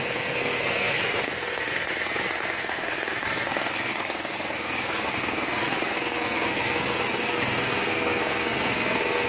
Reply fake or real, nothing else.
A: fake